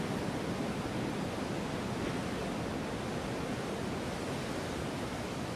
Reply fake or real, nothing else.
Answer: real